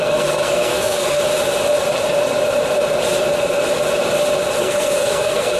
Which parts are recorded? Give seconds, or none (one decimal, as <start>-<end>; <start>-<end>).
1.2-4.6

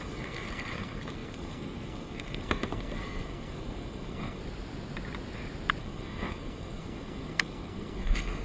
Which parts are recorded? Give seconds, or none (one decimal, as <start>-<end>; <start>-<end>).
4.4-5.8

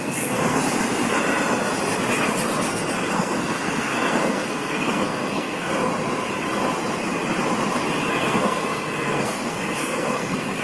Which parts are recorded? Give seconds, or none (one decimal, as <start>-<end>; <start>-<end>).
0.6-3.1; 5.7-8.1